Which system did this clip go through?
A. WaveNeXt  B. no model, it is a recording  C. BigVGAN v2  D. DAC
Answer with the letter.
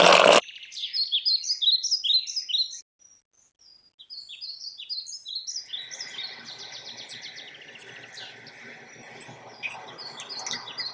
B